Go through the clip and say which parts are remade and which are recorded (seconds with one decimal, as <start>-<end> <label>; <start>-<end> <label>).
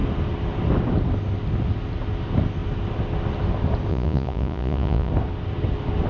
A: 0.0-3.9 recorded; 3.9-5.1 remade; 5.1-6.1 recorded